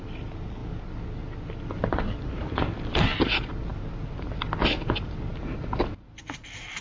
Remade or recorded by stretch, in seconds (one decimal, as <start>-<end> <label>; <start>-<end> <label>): 0.0-6.8 recorded